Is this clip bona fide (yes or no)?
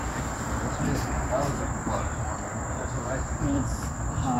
yes